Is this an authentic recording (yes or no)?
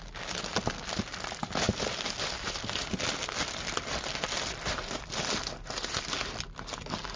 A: yes